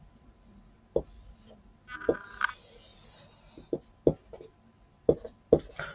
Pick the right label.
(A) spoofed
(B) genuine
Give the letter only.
B